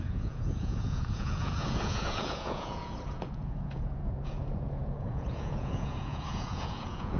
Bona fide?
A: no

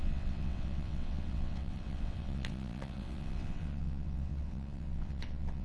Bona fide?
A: no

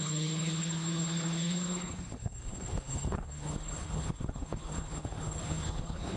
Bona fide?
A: no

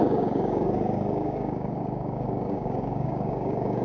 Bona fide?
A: no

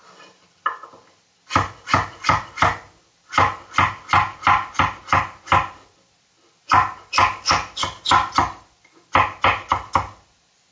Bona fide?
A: yes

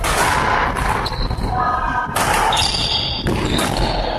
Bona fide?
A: yes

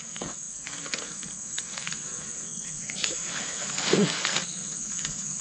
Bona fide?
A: no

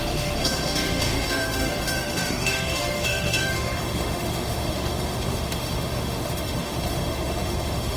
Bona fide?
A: no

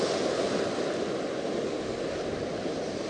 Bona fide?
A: yes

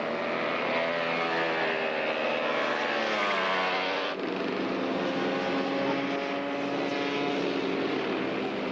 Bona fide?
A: yes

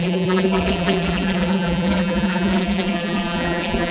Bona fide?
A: no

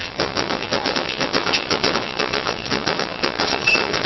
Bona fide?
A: no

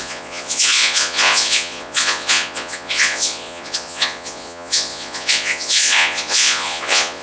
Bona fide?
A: no